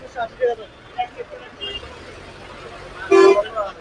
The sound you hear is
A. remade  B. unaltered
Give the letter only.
B